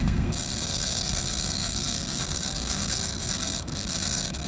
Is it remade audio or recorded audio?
remade